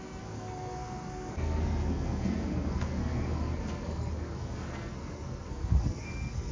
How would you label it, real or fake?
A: fake